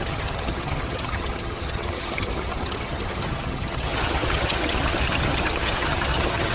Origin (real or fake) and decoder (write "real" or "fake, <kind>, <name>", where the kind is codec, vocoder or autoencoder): fake, vocoder, HiFi-GAN